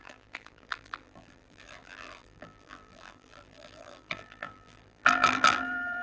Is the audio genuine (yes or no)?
no